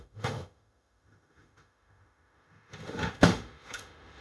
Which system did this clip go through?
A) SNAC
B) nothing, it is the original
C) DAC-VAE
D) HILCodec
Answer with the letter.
C